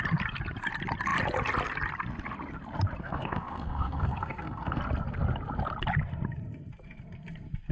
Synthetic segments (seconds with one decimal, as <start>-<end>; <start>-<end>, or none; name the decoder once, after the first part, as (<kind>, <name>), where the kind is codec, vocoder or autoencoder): 3.0-4.8 (codec, SNAC)